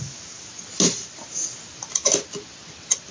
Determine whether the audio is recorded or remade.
recorded